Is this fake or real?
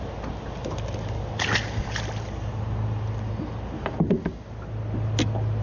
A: real